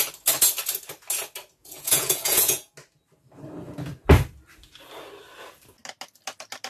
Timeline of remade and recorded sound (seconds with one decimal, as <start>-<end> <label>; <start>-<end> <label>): 0.0-1.6 recorded; 1.6-2.7 remade; 2.7-6.7 recorded